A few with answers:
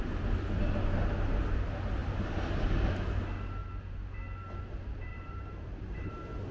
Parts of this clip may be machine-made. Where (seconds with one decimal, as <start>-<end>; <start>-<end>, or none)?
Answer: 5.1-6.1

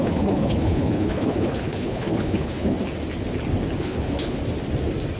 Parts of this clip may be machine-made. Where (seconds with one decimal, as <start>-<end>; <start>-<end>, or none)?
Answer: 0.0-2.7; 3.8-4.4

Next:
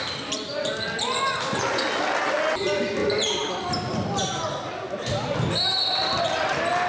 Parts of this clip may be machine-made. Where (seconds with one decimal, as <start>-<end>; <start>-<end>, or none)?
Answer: none